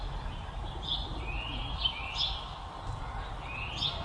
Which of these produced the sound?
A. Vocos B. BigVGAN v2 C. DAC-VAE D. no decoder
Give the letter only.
D